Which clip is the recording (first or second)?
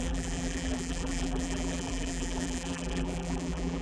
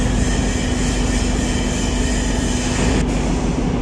second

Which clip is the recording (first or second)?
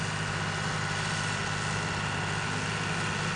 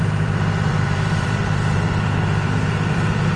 first